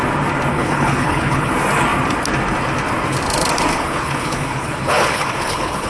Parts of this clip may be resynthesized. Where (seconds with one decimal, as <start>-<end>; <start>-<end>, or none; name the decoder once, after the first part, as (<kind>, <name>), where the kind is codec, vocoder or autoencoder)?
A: 0.5-1.5 (codec, HILCodec); 3.7-5.9